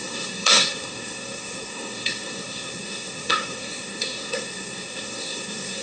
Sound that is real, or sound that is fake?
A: fake